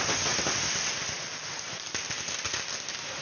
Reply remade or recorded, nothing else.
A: recorded